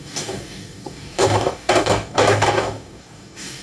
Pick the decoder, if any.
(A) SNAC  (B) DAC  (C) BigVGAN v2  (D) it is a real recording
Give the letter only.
B